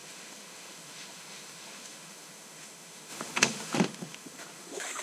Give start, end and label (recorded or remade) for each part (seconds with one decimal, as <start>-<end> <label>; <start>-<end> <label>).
0.0-5.0 remade